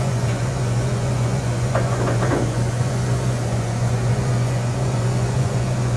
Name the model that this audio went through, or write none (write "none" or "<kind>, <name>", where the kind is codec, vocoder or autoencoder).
vocoder, Vocos